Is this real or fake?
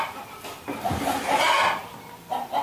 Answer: real